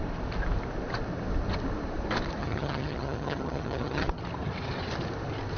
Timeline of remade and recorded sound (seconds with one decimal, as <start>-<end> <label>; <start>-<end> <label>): 0.0-2.4 recorded; 2.4-4.2 remade; 4.2-5.6 recorded